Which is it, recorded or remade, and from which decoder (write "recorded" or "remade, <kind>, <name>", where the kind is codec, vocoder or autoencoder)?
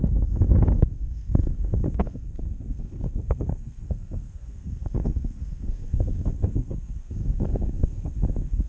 remade, codec, SNAC